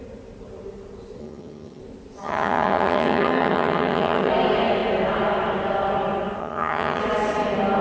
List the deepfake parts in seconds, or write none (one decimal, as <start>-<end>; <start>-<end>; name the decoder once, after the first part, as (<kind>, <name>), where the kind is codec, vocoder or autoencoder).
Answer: 1.2-1.8 (vocoder, HiFi-GAN); 2.2-4.3; 6.4-7.0